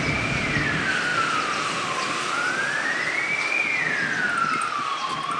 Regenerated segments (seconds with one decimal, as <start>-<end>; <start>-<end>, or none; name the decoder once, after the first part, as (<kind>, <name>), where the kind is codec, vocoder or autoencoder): 1.1-3.8 (vocoder, BigVGAN v2)